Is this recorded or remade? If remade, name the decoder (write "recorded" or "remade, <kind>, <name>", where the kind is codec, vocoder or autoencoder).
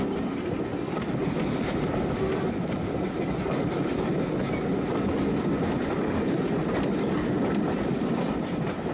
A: recorded